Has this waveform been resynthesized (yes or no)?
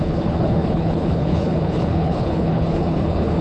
yes